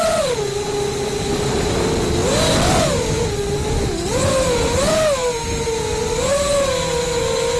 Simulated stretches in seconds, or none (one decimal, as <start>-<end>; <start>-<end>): none